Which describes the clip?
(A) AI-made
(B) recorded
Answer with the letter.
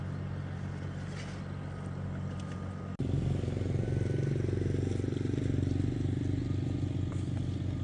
B